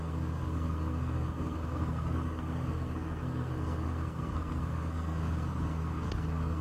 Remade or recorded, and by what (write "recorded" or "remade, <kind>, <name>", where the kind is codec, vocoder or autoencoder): remade, codec, SNAC